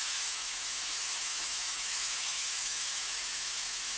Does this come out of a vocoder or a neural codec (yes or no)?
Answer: yes